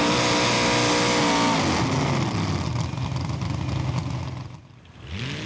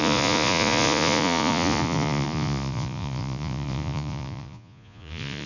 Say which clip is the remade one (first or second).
second